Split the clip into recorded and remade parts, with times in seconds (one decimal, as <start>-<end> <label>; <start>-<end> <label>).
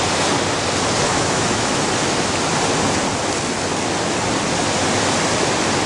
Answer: 0.0-1.1 recorded; 1.1-1.9 remade; 1.9-5.9 recorded